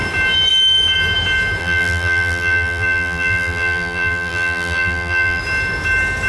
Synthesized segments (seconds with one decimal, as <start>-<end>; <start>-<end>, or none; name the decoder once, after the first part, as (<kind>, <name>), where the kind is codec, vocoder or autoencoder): 1.6-5.4 (vocoder, BigVGAN v2)